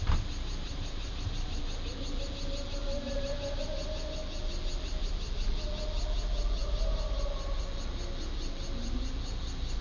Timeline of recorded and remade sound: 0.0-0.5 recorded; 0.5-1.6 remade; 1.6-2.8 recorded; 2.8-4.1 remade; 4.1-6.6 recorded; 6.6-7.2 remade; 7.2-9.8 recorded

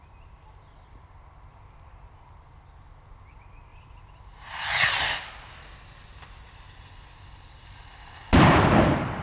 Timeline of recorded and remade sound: 0.0-3.7 recorded; 3.7-8.4 remade; 8.4-9.2 recorded

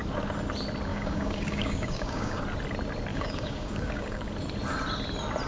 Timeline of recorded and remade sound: 0.0-0.9 recorded; 0.9-2.4 remade; 2.4-3.1 recorded; 3.1-4.3 remade; 4.3-5.5 recorded

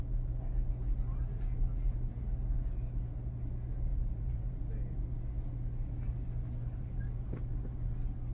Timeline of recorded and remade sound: 0.0-3.9 recorded; 3.9-4.6 remade; 4.6-8.3 recorded

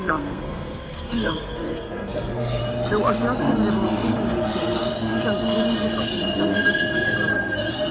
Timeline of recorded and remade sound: 0.0-2.6 remade; 2.6-7.3 recorded; 7.3-7.9 remade

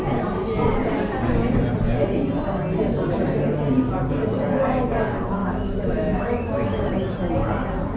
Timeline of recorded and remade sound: 0.0-5.4 recorded; 5.4-6.9 remade; 6.9-8.0 recorded